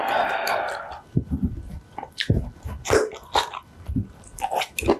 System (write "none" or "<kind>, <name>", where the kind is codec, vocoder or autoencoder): none